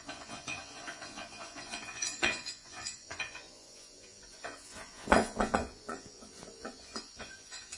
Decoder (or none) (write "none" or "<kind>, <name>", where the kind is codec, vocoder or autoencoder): vocoder, Vocos